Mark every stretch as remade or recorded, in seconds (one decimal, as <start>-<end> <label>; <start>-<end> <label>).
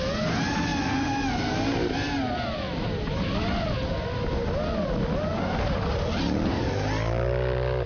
0.0-7.9 recorded